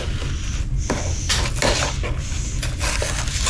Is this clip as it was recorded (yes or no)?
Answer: yes